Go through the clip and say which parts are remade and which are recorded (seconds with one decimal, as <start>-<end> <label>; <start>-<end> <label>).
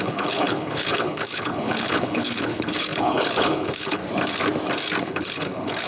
0.0-4.0 remade; 4.0-5.0 recorded; 5.0-5.9 remade